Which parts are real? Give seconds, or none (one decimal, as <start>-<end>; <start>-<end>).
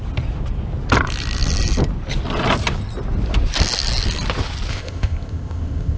0.0-4.7